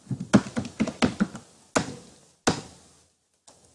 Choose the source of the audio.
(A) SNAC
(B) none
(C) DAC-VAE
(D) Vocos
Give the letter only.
B